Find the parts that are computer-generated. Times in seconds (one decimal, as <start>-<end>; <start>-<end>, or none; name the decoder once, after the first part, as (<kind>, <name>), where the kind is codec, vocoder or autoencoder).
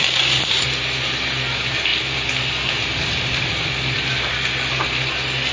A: none